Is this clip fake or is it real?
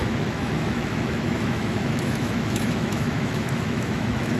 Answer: fake